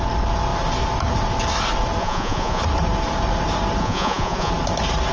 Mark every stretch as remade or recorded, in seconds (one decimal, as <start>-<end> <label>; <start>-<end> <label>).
0.0-2.0 recorded; 2.0-2.6 remade; 2.6-3.8 recorded; 3.8-4.5 remade; 4.5-5.1 recorded